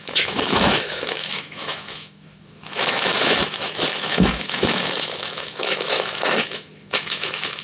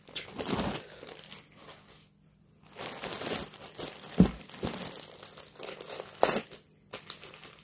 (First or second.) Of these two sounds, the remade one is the first